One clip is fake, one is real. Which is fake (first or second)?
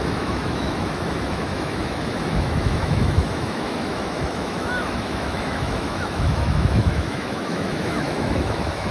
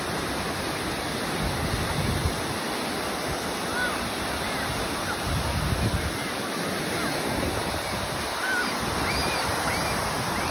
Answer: first